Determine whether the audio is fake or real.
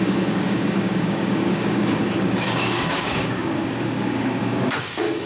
fake